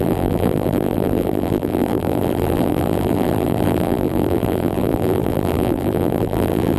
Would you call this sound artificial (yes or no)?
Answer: yes